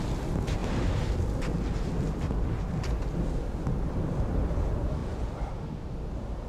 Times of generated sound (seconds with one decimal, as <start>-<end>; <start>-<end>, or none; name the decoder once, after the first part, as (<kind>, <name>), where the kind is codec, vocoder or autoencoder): none